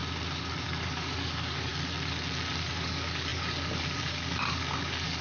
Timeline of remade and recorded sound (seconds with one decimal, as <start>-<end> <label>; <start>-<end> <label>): 0.0-0.6 recorded; 0.6-1.7 remade; 1.7-2.7 recorded; 2.7-5.2 remade